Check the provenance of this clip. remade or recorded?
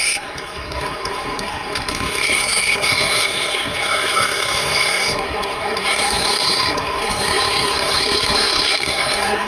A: remade